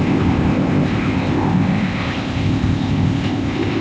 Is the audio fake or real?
fake